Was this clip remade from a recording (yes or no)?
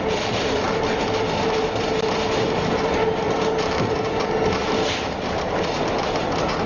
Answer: no